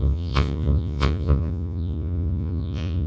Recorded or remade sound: remade